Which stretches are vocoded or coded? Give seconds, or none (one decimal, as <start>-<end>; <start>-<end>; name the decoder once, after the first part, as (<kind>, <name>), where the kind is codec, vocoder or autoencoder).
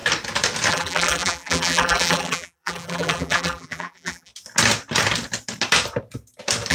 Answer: 0.7-4.3 (vocoder, BigVGAN v2)